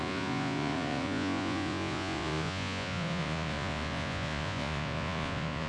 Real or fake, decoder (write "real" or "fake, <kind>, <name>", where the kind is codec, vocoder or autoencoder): fake, vocoder, Vocos